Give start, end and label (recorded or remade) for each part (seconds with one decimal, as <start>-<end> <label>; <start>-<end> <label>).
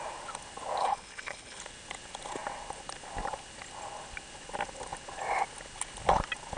0.0-0.8 recorded; 0.8-1.6 remade; 1.6-6.6 recorded